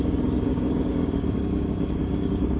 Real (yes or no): no